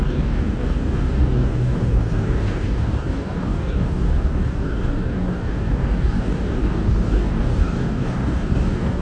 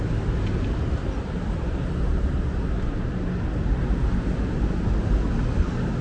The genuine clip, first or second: second